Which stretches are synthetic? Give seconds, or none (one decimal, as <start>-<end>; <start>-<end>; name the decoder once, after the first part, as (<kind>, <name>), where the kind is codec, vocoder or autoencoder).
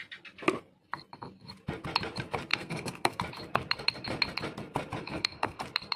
2.5-3.2 (codec, SNAC); 5.0-5.6